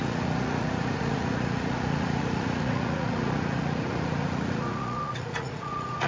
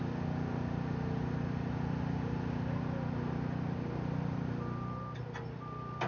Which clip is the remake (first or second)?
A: first